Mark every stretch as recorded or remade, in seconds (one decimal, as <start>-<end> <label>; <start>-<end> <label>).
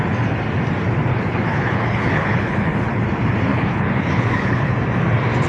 0.0-1.1 recorded; 1.1-3.0 remade; 3.0-3.5 recorded; 3.5-4.7 remade; 4.7-5.5 recorded